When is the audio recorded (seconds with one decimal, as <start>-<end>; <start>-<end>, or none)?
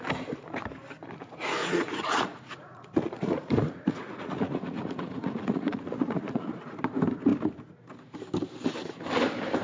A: 0.0-1.6; 6.8-9.6